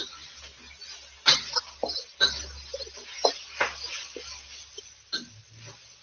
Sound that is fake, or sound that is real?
real